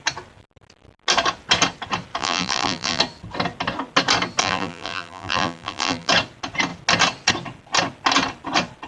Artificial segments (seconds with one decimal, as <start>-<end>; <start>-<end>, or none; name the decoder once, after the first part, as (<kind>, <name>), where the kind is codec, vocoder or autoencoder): 2.2-3.0 (vocoder, BigVGAN v2); 4.4-6.1